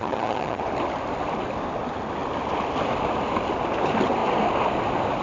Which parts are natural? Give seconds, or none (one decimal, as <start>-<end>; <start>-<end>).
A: 0.6-5.2